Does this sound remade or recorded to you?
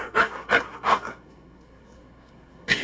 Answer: remade